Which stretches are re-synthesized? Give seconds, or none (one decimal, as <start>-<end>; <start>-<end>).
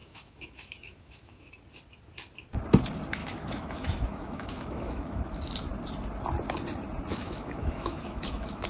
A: 0.0-1.5; 3.2-5.2; 7.1-8.7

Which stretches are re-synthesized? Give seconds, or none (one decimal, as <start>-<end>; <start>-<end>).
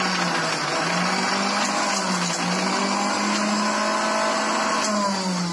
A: none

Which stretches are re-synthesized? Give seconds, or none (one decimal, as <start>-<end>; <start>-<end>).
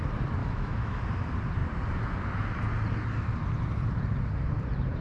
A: 0.4-1.0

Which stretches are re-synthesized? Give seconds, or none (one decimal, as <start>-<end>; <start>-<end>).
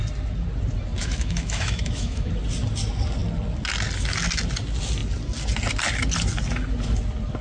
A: 1.0-2.3